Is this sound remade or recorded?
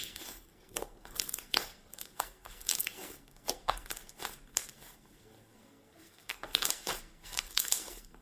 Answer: remade